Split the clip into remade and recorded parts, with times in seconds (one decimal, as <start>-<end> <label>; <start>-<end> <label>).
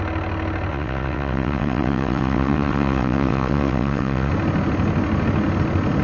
0.0-0.7 recorded; 0.7-4.3 remade; 4.3-6.0 recorded